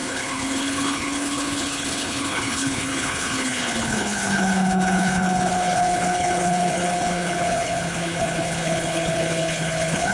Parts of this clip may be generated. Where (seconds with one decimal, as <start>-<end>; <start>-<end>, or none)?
0.0-10.1